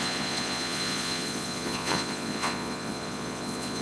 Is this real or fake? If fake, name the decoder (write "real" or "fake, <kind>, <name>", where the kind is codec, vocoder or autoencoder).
fake, vocoder, Vocos